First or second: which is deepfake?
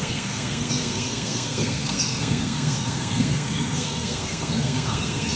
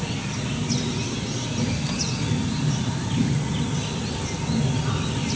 first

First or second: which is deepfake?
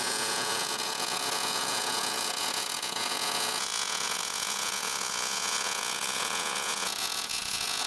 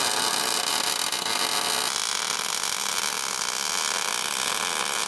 first